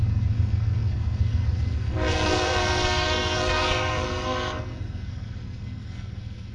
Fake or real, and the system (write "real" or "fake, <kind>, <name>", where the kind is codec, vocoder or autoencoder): fake, codec, SNAC